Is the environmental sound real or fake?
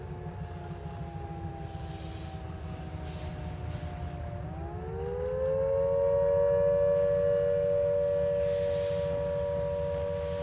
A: real